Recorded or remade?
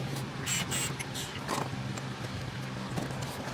recorded